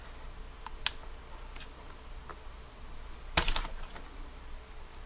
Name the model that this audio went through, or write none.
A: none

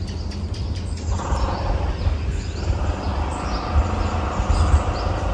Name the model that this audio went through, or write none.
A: none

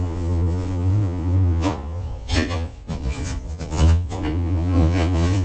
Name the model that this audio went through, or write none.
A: vocoder, Vocos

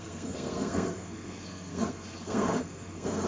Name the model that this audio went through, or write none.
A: codec, SNAC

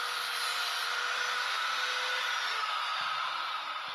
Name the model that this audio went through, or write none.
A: none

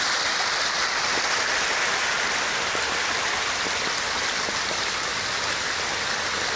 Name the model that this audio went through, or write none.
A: none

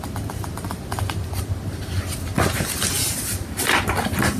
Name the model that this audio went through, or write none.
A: none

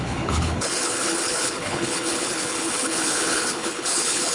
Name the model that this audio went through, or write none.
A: codec, HILCodec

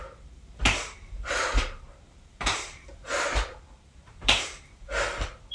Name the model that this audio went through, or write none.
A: vocoder, BigVGAN v2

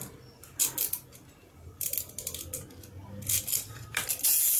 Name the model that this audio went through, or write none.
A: none